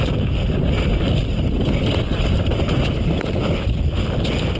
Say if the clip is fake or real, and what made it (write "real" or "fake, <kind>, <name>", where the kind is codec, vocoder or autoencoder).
real